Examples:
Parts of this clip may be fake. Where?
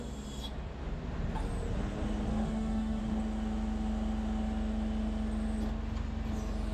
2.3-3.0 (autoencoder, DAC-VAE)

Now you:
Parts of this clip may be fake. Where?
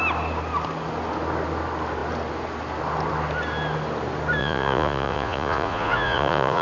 4.4-6.6 (vocoder, Vocos)